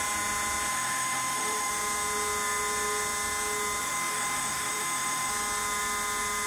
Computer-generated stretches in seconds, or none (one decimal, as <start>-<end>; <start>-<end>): 0.7-1.7; 3.8-5.3